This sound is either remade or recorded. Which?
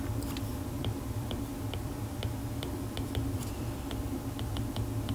remade